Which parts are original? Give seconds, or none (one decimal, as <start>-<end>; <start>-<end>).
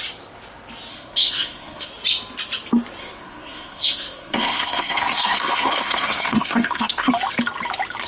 0.0-0.9; 1.9-3.0; 7.1-8.1